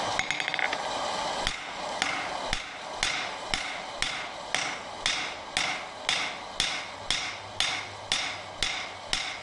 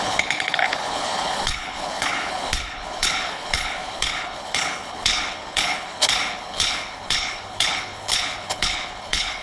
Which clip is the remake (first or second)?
second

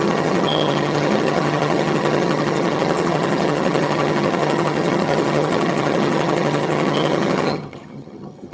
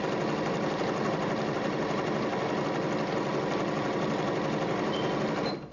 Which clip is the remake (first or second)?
first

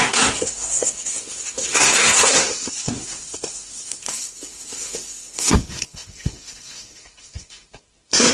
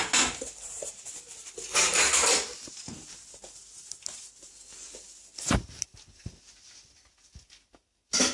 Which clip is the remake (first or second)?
first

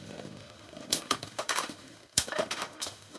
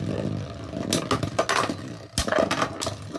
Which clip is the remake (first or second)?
first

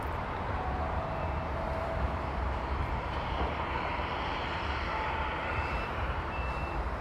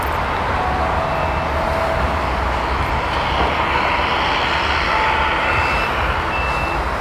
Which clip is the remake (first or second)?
first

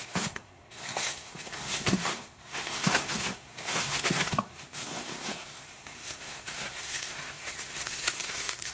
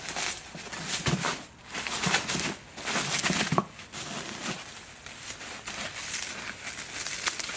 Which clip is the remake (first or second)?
first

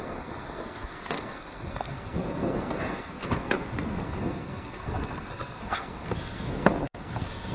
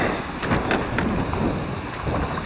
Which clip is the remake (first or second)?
first